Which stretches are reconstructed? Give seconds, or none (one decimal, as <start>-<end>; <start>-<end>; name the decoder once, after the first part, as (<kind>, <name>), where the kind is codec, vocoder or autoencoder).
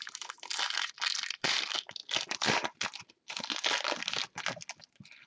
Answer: none